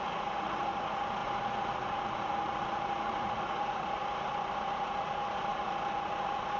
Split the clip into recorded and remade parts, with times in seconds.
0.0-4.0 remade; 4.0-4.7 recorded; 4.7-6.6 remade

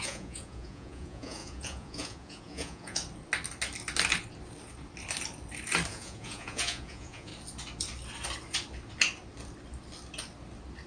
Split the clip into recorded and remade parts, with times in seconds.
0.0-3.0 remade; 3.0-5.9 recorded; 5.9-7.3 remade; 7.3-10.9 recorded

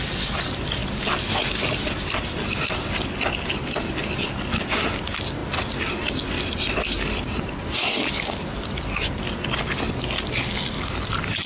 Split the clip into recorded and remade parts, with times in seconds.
0.0-11.5 recorded